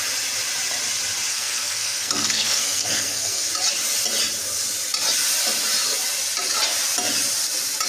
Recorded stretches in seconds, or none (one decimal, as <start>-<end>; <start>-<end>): 0.0-1.3; 3.5-7.9